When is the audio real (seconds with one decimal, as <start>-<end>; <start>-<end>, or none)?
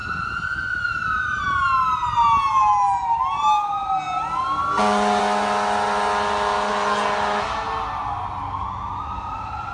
0.0-9.7